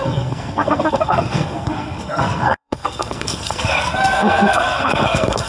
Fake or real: fake